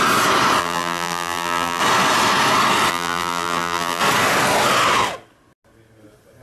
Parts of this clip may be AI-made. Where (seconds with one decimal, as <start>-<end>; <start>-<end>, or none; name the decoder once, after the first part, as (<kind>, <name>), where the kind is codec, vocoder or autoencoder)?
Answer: 0.6-1.8 (vocoder, BigVGAN v2); 2.9-4.0